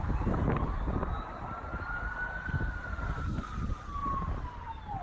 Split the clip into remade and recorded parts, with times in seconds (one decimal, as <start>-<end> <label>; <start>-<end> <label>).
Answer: 0.0-4.0 recorded; 4.0-5.0 remade